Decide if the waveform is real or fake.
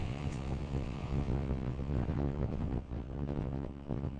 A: fake